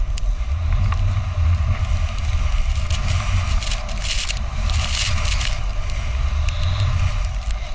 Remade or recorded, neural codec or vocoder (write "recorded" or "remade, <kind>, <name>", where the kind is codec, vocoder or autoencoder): recorded